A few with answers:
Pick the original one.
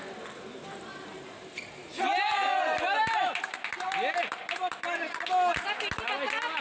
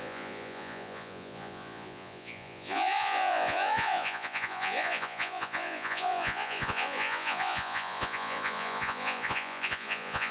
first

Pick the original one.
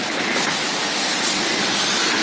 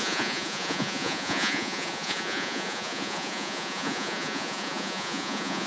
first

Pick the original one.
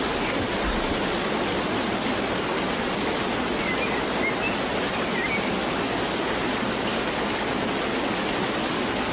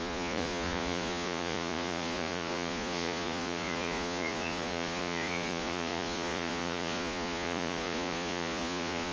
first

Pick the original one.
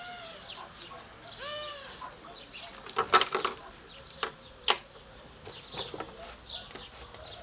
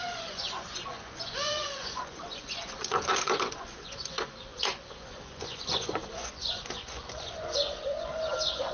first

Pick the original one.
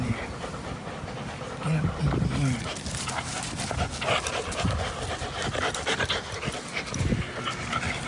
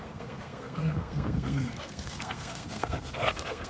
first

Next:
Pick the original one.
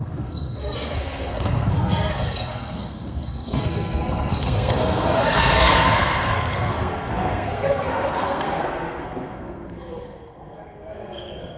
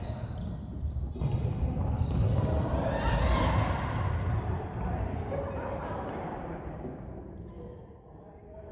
second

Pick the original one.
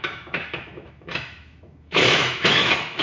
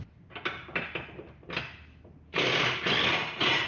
second